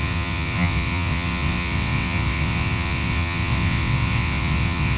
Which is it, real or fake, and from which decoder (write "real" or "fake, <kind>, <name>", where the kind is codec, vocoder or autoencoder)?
fake, vocoder, WaveNeXt